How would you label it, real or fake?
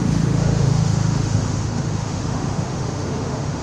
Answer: fake